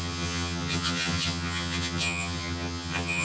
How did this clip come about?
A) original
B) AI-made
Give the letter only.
B